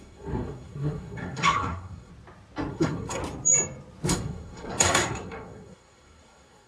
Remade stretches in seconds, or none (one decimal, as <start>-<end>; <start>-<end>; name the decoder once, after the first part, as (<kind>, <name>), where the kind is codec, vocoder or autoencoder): 0.0-2.1 (codec, SNAC); 2.7-3.2; 4.1-6.7